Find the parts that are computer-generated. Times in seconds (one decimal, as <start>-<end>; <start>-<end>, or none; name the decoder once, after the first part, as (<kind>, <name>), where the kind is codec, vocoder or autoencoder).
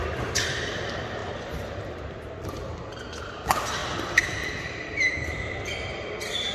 1.2-3.0 (vocoder, BigVGAN v2); 3.8-6.1